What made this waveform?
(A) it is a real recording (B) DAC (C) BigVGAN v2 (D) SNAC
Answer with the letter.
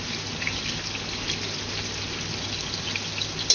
A